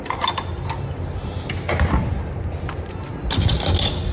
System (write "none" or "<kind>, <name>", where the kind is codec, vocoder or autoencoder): none